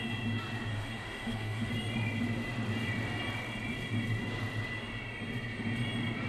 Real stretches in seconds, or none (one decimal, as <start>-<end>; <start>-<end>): 0.0-0.7; 1.7-6.3